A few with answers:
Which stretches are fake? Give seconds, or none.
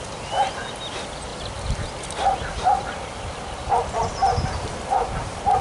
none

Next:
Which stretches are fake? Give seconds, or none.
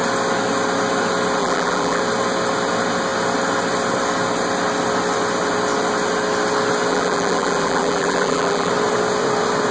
1.4-2.0 (vocoder, BigVGAN v2); 6.9-8.7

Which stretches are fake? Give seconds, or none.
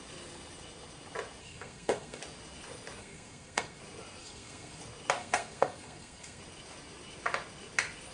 1.4-2.2 (codec, SNAC); 3.0-3.8; 4.2-4.8; 5.2-6.4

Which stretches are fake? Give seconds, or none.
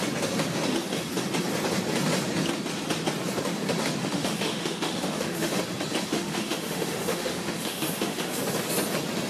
4.0-5.6 (autoencoder, DAC-VAE); 6.1-8.4